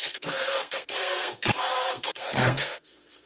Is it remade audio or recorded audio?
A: remade